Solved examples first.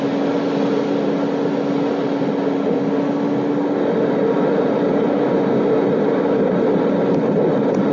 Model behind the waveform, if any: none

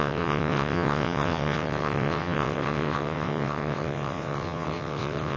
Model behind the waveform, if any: vocoder, WaveNeXt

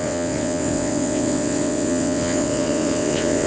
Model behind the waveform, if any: vocoder, WaveNeXt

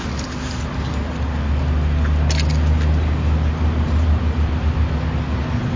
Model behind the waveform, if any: none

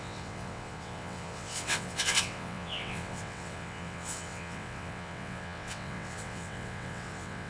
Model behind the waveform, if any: vocoder, WaveNeXt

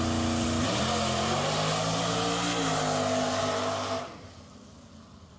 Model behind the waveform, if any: none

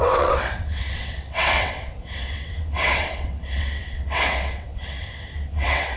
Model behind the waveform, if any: vocoder, WaveNeXt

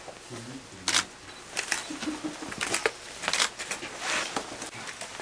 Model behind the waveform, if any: none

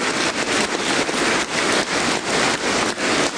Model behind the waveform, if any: none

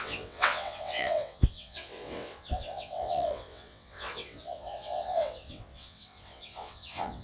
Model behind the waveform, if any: vocoder, WaveNeXt